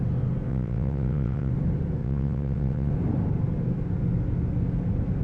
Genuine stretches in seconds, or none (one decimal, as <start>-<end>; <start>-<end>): 0.0-0.5; 1.5-2.0; 2.9-5.2